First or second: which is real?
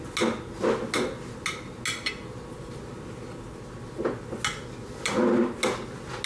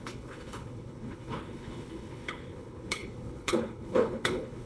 first